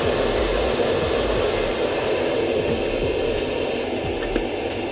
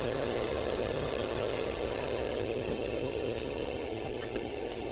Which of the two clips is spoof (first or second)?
second